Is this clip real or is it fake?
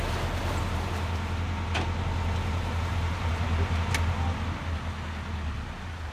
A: real